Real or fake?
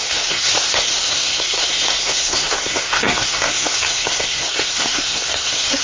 fake